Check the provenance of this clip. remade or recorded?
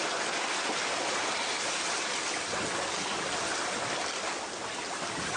recorded